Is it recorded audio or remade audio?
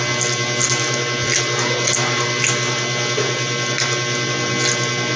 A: recorded